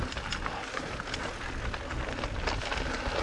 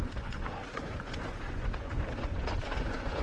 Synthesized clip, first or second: second